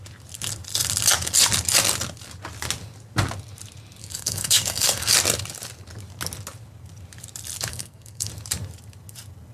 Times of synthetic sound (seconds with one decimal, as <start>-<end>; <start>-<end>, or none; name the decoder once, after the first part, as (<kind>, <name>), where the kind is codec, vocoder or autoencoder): 4.0-5.1 (codec, SNAC); 7.7-8.3